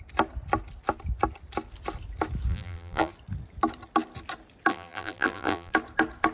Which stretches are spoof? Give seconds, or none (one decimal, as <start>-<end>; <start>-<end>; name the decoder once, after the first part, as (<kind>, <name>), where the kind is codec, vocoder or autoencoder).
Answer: 2.5-3.1 (vocoder, BigVGAN v2); 4.7-5.7